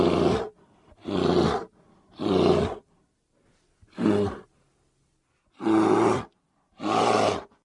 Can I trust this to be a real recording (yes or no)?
yes